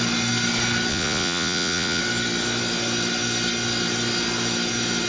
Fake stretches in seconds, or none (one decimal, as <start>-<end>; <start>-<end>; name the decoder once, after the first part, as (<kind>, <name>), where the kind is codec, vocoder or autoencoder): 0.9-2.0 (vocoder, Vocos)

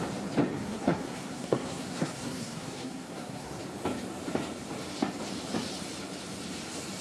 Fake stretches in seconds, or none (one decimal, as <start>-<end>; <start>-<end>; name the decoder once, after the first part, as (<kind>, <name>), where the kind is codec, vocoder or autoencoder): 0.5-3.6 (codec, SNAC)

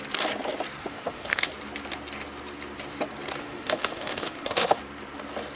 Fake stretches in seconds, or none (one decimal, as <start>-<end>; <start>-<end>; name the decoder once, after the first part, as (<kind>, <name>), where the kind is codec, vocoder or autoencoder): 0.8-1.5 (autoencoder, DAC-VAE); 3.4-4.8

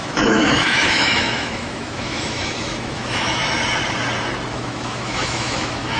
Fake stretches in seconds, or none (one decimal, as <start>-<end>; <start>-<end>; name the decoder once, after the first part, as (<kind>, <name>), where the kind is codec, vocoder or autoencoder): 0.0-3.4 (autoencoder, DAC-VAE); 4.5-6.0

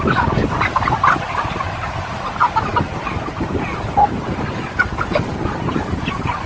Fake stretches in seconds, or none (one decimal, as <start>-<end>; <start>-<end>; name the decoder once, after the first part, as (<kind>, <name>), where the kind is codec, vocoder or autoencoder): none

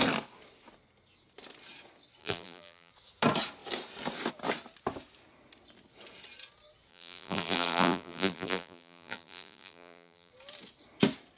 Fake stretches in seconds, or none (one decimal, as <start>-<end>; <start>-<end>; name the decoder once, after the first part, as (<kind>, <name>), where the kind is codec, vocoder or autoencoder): 2.2-2.9 (vocoder, BigVGAN v2); 6.9-10.3

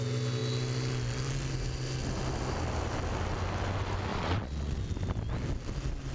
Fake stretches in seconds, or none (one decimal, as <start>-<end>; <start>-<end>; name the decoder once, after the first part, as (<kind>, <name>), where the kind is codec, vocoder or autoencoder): 4.1-4.8 (vocoder, Vocos)